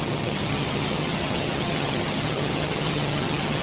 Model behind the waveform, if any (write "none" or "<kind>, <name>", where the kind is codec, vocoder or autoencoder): vocoder, HiFi-GAN